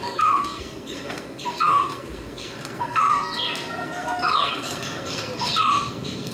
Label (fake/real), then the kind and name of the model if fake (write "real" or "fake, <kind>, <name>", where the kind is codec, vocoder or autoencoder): fake, codec, SNAC